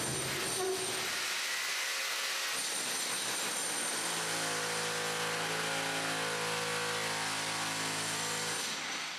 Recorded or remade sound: recorded